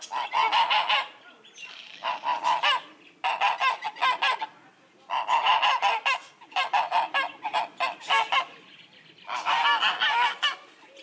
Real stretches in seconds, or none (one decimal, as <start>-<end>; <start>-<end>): 0.0-11.0